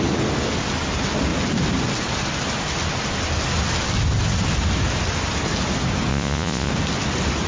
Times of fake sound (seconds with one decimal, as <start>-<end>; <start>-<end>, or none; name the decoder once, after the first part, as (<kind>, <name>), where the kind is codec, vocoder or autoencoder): 6.1-6.7 (vocoder, Vocos)

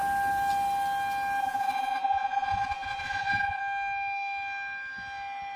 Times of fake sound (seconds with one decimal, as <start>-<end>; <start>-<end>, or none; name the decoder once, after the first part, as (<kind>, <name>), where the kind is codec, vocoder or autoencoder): 1.4-3.6 (vocoder, Vocos)